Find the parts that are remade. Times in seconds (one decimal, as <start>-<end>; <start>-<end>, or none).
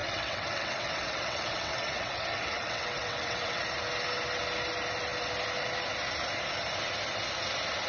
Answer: 0.0-3.6